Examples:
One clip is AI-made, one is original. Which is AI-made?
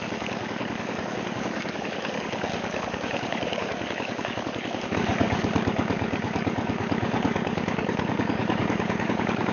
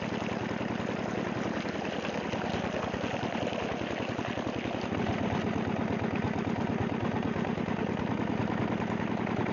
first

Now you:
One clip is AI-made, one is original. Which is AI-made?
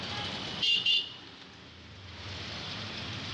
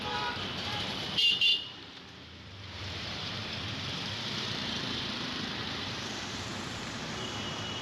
second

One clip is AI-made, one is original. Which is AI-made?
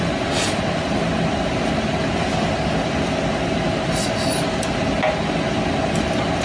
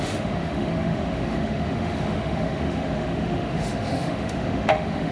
second